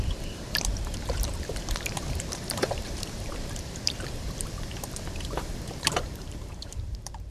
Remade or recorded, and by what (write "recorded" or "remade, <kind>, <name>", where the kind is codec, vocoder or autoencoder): remade, vocoder, BigVGAN v2